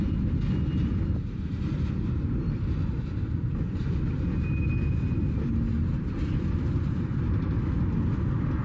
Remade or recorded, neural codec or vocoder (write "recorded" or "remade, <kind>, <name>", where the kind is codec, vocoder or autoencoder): recorded